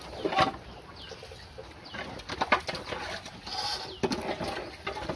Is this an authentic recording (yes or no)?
yes